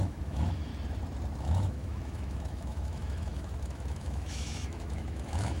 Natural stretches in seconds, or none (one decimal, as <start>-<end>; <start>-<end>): 0.7-1.4

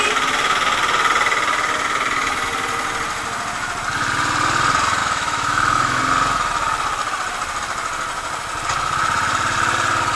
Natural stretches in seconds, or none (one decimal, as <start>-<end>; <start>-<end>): 0.0-5.0; 6.0-10.2

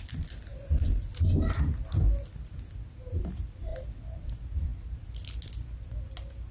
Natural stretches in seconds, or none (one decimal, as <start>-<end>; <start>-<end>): 0.0-6.5

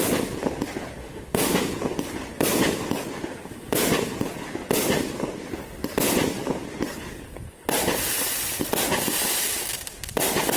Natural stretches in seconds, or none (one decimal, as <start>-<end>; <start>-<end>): 0.0-1.0; 1.7-10.6

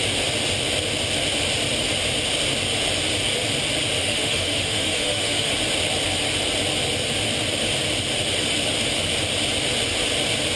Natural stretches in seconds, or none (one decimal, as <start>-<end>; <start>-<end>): 0.0-4.0; 5.5-10.6